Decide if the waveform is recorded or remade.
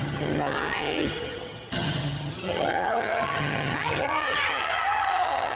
remade